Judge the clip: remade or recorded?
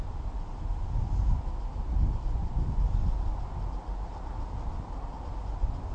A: recorded